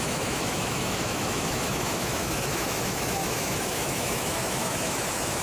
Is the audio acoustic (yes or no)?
no